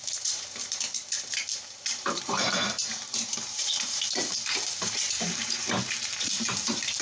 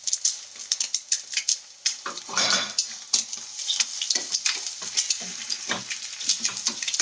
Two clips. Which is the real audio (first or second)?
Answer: second